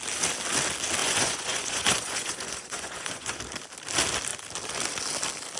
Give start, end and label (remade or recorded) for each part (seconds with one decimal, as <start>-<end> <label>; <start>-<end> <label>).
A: 0.0-1.0 recorded; 1.0-3.4 remade; 3.4-5.6 recorded